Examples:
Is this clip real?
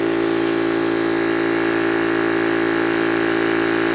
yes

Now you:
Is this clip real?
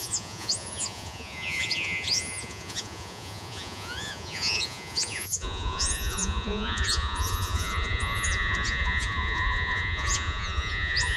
no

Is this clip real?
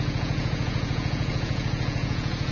no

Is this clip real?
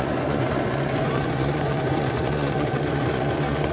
no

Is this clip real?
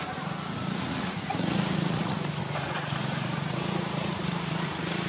no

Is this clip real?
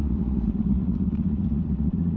no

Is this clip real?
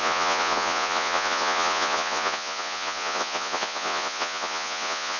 no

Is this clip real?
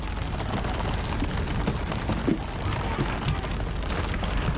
yes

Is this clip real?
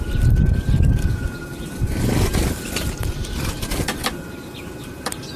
yes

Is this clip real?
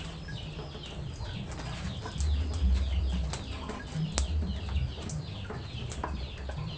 yes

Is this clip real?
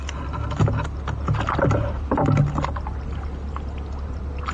yes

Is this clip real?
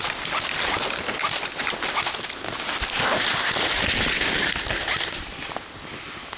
yes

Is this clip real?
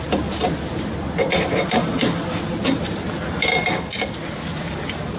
yes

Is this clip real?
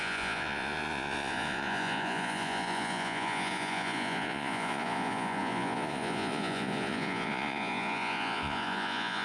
no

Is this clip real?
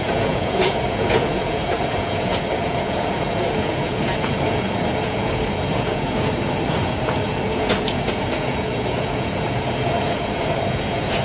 no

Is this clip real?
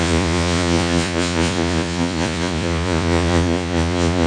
no